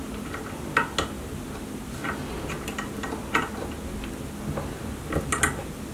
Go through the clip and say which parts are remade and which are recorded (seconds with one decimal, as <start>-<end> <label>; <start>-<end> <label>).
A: 0.0-5.9 recorded